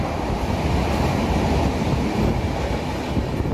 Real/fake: real